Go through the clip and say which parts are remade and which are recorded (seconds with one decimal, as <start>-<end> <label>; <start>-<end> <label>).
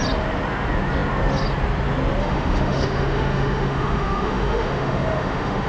0.0-2.2 recorded; 2.2-5.7 remade